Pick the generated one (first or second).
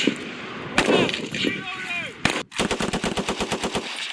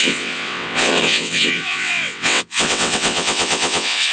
second